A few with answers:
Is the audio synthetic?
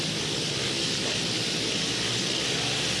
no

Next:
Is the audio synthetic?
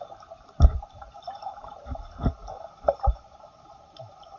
yes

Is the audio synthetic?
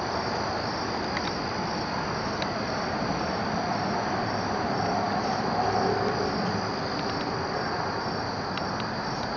no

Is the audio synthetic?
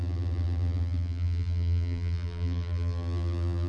yes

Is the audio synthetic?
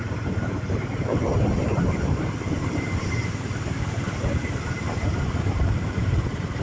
yes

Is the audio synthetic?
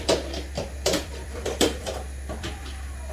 yes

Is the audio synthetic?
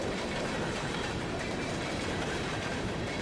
yes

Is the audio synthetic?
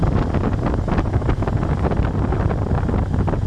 no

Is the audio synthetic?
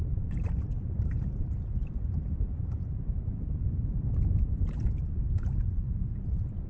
yes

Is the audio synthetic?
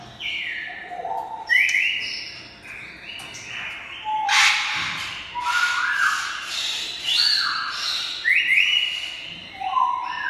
no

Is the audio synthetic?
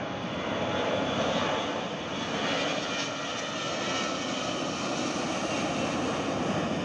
no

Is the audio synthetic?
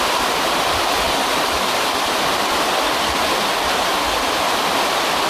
no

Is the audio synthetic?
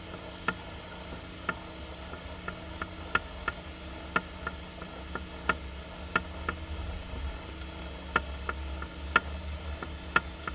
no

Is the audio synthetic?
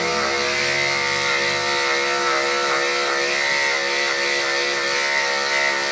no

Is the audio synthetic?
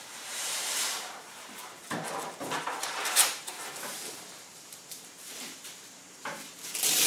yes